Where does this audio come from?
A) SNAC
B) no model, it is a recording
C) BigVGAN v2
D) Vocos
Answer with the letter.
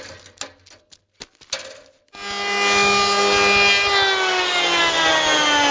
B